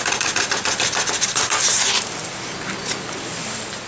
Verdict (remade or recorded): recorded